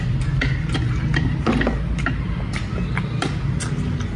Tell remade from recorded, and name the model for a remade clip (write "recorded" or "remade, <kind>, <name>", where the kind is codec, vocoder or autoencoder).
recorded